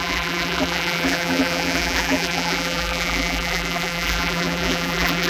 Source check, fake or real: fake